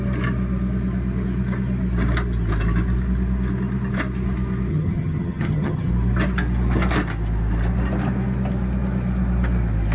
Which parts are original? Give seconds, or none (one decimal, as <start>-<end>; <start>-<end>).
0.0-4.7; 5.9-9.9